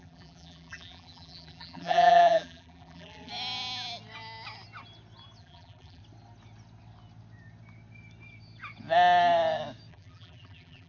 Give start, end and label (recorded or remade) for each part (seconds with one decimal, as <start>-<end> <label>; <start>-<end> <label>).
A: 0.0-3.3 remade; 3.3-5.4 recorded; 5.4-6.0 remade; 6.0-9.9 recorded; 9.9-10.9 remade